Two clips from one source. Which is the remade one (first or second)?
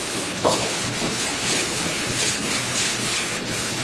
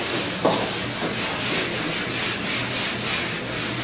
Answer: first